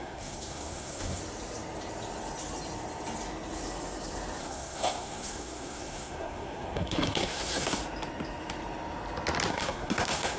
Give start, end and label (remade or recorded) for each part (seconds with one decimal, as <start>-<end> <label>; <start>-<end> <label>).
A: 0.0-1.2 remade; 1.2-4.4 recorded; 4.4-7.8 remade; 7.8-9.5 recorded; 9.5-10.4 remade